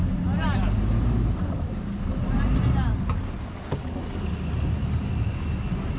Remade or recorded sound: recorded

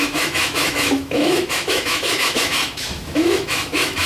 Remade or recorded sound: remade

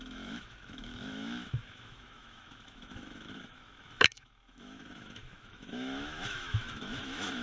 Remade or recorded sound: remade